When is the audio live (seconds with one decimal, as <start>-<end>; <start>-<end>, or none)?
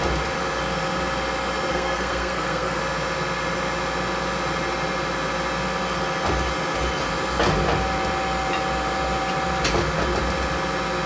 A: 0.0-1.7; 2.8-11.1